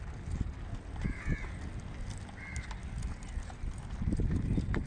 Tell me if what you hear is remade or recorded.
recorded